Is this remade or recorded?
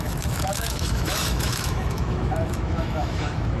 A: remade